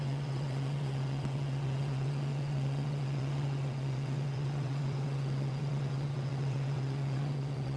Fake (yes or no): yes